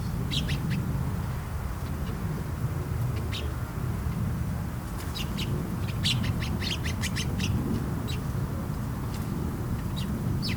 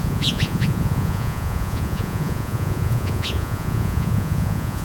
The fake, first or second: second